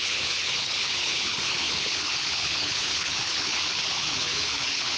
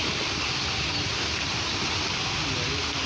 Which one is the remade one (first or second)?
first